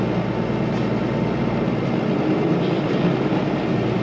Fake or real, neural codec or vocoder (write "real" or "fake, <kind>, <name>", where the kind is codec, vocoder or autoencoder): real